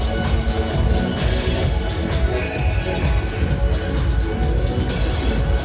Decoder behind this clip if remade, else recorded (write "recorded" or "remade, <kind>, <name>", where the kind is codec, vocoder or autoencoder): recorded